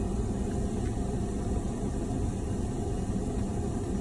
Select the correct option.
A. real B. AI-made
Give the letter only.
A